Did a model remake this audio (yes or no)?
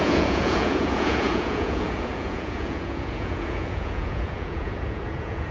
yes